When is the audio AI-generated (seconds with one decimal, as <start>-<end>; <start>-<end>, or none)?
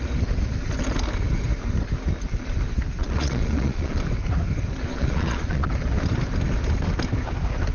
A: 3.0-4.0; 4.9-5.7